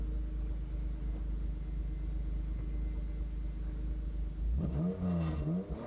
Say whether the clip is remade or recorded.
recorded